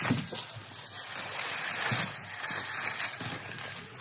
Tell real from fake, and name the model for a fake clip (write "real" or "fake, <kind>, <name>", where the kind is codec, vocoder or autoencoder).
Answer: real